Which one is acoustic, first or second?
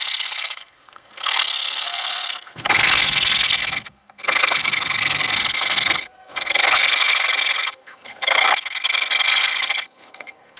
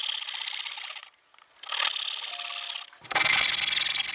second